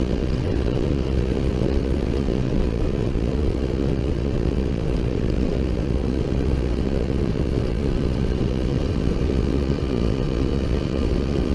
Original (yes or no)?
no